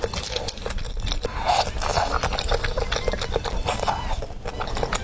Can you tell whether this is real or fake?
real